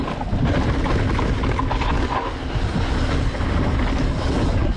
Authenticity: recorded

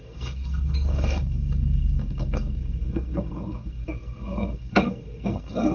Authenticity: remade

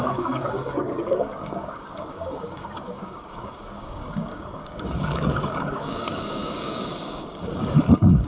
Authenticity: remade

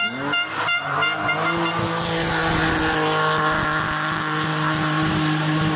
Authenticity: recorded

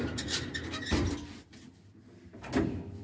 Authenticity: recorded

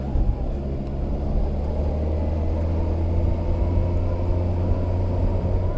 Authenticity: recorded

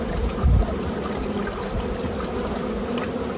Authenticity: recorded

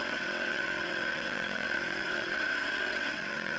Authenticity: remade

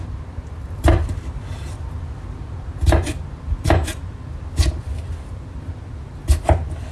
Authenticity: recorded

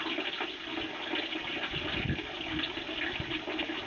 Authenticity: recorded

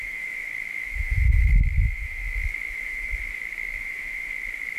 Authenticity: remade